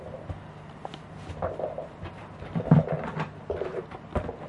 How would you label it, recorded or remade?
recorded